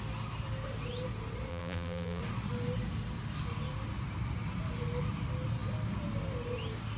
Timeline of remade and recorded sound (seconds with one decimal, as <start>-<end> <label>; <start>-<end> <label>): 0.0-1.5 recorded; 1.5-2.2 remade; 2.2-7.0 recorded